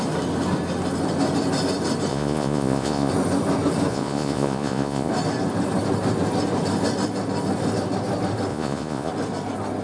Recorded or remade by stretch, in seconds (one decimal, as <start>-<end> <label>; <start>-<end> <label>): 0.0-2.1 recorded; 2.1-3.1 remade; 3.1-3.9 recorded; 3.9-5.1 remade; 5.1-8.5 recorded; 8.5-9.1 remade; 9.1-9.8 recorded